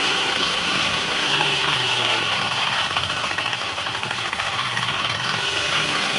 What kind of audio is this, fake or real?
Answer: fake